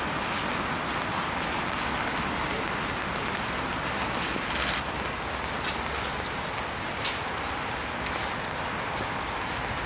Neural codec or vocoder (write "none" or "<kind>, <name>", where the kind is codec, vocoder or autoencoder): none